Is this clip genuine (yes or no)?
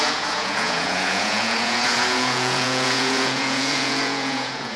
no